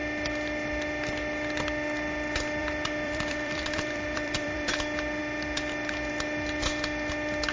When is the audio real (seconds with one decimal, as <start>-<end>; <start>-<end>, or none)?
0.0-2.6; 4.7-7.5